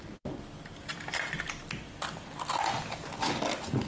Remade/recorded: recorded